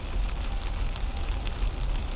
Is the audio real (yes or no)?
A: yes